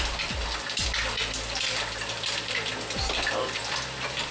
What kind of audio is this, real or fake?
real